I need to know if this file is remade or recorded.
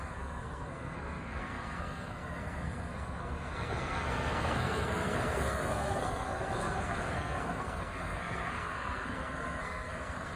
remade